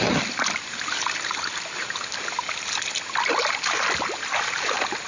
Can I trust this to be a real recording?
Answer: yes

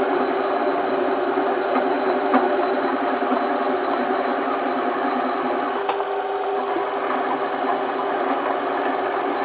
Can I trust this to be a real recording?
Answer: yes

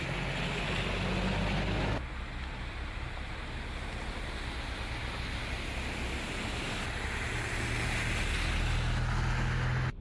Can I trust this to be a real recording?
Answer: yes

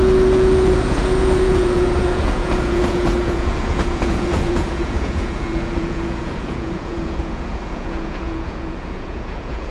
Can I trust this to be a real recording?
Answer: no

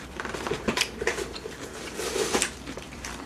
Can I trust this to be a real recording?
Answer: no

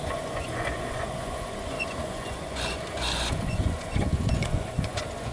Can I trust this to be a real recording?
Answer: no